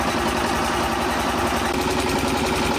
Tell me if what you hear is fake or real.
fake